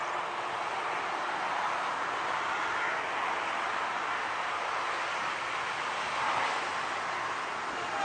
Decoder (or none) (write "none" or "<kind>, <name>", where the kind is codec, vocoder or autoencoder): none